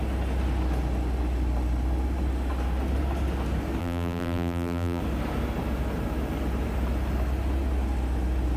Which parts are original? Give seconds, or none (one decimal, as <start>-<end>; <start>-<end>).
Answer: 0.0-3.8; 5.0-8.6